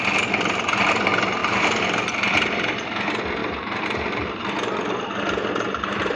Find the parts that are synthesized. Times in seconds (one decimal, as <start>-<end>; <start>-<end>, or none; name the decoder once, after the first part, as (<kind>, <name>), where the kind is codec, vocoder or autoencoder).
1.4-2.1 (vocoder, BigVGAN v2); 3.4-5.1